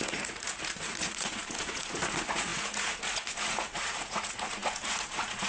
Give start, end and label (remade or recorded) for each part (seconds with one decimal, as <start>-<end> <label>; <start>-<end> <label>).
0.0-5.5 remade